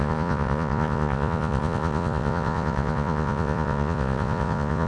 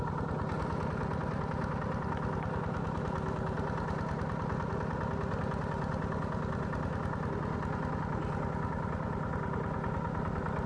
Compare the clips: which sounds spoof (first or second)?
first